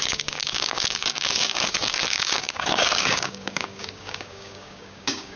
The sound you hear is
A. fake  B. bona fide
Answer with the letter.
A